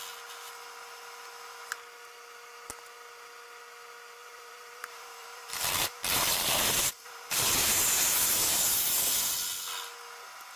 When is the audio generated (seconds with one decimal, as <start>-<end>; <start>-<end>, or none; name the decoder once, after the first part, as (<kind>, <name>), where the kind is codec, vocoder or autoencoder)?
4.2-9.3 (vocoder, BigVGAN v2)